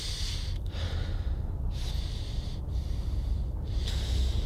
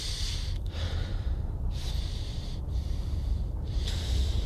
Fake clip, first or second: second